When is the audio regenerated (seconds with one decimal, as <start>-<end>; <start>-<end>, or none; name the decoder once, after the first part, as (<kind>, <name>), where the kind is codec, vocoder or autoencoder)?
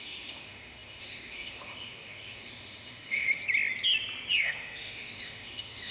0.0-3.4 (autoencoder, DAC-VAE); 4.4-5.9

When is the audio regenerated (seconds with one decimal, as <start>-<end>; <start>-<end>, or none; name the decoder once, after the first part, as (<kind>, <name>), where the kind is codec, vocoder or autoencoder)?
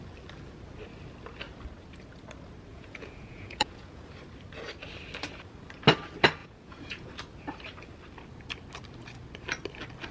2.7-4.1 (vocoder, Vocos); 6.4-7.1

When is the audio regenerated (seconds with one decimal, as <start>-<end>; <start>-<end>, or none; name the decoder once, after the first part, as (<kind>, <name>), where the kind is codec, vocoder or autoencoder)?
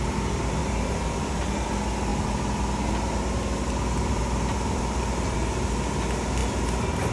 0.6-1.5 (vocoder, BigVGAN v2)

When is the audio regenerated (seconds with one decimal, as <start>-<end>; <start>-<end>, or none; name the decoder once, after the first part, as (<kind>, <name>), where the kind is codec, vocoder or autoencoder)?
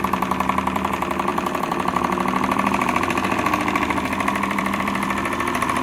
0.0-5.8 (vocoder, BigVGAN v2)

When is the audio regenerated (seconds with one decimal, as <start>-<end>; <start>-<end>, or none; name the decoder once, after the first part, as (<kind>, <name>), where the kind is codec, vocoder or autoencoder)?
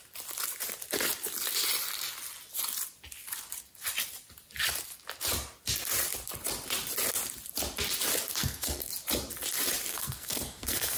8.4-8.9 (codec, SNAC); 9.9-11.0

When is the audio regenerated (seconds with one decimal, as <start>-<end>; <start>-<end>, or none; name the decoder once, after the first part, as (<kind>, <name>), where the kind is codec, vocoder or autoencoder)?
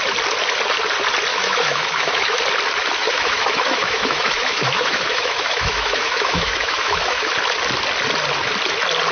1.3-2.4 (autoencoder, DAC-VAE); 3.0-7.3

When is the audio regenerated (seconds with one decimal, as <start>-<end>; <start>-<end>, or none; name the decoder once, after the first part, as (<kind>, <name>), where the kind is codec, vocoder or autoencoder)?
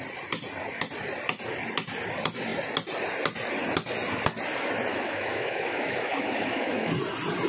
4.9-6.9 (autoencoder, DAC-VAE)